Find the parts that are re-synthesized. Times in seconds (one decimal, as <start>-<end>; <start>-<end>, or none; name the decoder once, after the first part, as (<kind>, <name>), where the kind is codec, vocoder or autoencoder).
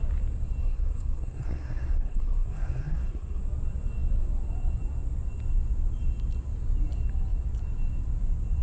0.6-3.4 (codec, SNAC)